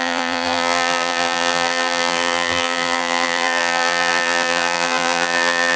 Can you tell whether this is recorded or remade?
remade